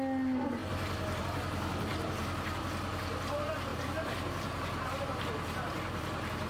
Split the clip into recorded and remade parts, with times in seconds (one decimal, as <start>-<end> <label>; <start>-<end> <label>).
0.0-1.9 recorded; 1.9-2.6 remade; 2.6-3.7 recorded; 3.7-6.5 remade